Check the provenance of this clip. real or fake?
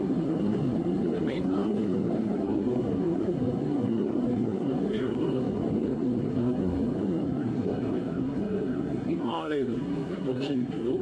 fake